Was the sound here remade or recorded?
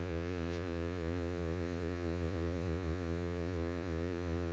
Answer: remade